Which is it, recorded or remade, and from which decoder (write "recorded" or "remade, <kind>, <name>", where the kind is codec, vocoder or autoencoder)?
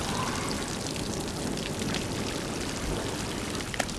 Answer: recorded